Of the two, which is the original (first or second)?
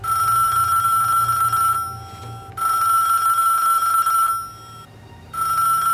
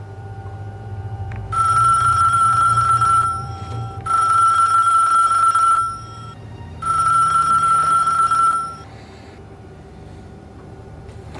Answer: first